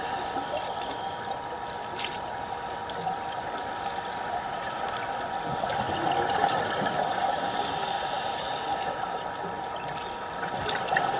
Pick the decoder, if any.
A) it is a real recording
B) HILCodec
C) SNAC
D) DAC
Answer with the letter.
A